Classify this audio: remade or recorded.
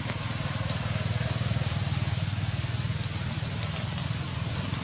recorded